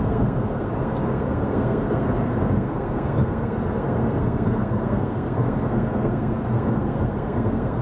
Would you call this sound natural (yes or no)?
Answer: no